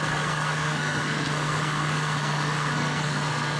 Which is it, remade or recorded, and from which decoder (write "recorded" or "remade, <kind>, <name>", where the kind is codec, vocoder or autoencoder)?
remade, codec, SNAC